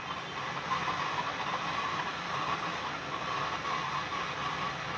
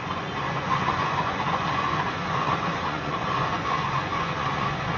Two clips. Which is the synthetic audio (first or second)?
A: second